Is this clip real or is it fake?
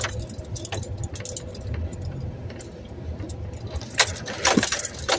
real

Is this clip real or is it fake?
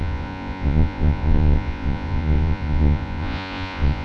fake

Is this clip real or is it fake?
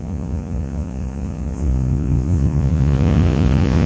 fake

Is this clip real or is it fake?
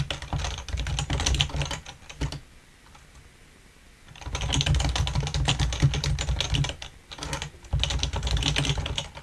real